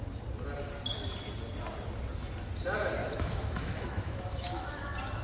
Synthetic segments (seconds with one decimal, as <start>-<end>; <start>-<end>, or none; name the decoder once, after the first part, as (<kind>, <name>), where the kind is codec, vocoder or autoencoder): 3.0-4.7 (autoencoder, DAC-VAE)

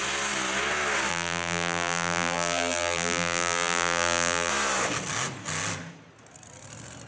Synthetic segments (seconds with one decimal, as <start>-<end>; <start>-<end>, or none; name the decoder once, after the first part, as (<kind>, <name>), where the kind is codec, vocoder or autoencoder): 1.1-4.5 (vocoder, BigVGAN v2)

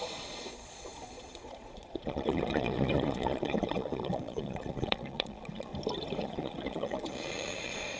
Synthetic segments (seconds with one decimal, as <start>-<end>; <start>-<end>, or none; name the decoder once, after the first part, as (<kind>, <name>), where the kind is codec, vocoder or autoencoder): 0.0-5.7 (vocoder, Vocos); 6.2-8.0

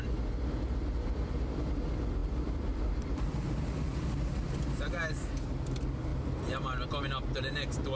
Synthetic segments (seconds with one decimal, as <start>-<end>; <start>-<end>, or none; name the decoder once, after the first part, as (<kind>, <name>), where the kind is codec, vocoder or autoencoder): 2.2-5.0 (vocoder, BigVGAN v2); 6.1-7.0

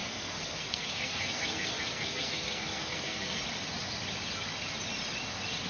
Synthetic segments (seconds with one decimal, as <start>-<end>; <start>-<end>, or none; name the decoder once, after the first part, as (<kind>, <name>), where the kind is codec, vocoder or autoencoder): 0.0-3.4 (codec, SNAC)

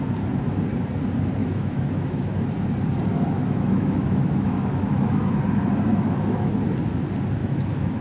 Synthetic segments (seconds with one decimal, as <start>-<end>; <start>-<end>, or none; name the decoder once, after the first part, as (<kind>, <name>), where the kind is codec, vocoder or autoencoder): 1.4-2.4 (autoencoder, DAC-VAE); 3.1-5.4; 5.9-6.5; 7.4-8.0